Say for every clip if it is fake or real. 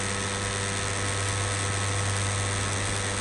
real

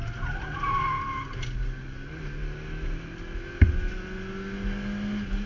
real